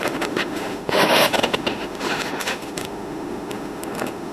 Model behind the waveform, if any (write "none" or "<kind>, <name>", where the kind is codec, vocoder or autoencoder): autoencoder, DAC-VAE